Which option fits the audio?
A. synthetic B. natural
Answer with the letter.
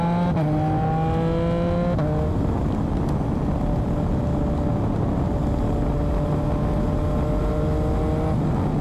B